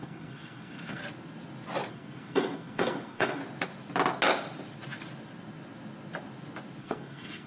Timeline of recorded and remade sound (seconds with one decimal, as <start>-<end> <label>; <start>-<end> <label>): 0.0-1.0 remade; 1.0-1.9 recorded; 1.9-3.4 remade; 3.4-6.8 recorded; 6.8-7.5 remade